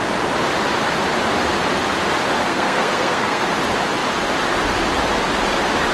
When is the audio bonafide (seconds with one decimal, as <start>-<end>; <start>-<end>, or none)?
0.0-2.4; 3.4-5.9